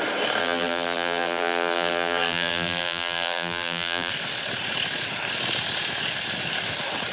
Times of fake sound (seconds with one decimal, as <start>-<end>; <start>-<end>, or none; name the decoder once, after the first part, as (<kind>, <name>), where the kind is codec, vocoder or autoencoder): 0.4-4.1 (vocoder, BigVGAN v2)